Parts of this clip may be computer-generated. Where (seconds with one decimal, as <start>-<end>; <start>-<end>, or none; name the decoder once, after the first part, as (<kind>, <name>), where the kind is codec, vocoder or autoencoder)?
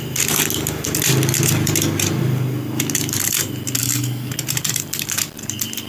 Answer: 3.8-4.3 (codec, DAC)